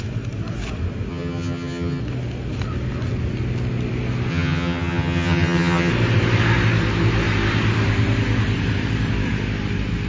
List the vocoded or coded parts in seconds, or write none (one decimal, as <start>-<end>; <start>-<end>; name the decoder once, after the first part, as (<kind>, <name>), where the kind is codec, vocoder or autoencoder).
1.1-2.0 (vocoder, HiFi-GAN); 4.3-5.9